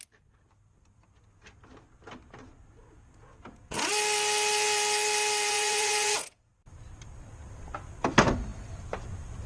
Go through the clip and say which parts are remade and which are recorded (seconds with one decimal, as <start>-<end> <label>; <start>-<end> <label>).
0.0-2.8 recorded; 2.8-3.9 remade; 3.9-5.5 recorded; 5.5-6.5 remade; 6.5-9.5 recorded